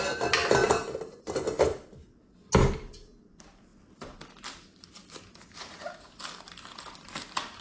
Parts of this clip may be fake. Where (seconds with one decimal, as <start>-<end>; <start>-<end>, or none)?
none